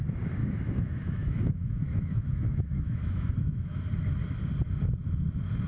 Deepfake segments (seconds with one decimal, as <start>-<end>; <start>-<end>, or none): 0.4-3.8